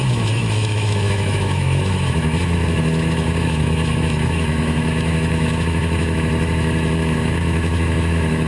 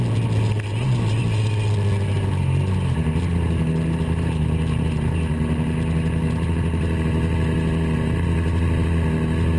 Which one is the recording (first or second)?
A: second